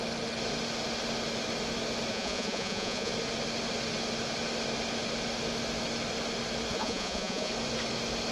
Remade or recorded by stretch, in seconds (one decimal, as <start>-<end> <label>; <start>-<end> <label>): 0.0-2.1 recorded; 2.1-3.1 remade; 3.1-6.7 recorded; 6.7-7.5 remade; 7.5-8.3 recorded